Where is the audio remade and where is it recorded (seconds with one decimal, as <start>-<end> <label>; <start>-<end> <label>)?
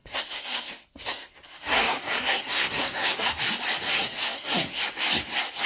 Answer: 0.0-3.4 remade; 3.4-3.9 recorded; 3.9-4.8 remade; 4.8-5.7 recorded